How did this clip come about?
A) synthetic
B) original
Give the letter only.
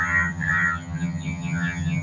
A